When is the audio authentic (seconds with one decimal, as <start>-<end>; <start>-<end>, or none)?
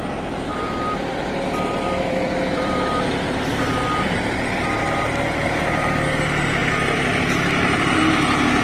0.0-0.5; 3.2-8.6